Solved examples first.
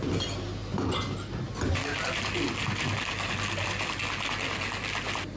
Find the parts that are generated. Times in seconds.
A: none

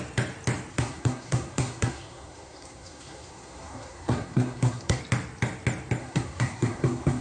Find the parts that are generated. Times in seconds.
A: 0.7-5.0 (codec, SNAC); 6.0-7.2

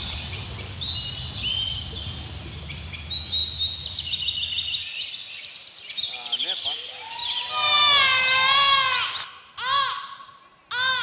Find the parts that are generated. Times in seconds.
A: none

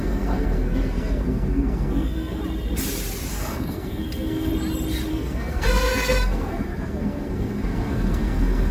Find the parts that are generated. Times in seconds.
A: 0.0-2.4 (codec, SNAC); 3.3-4.5; 5.1-8.7

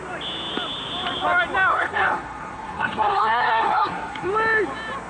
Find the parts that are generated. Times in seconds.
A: 1.7-4.3 (codec, SNAC)

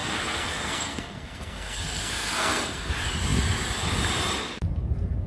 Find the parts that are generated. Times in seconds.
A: 0.0-2.9 (codec, SNAC)